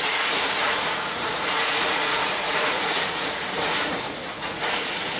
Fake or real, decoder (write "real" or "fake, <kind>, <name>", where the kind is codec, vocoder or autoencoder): fake, vocoder, Vocos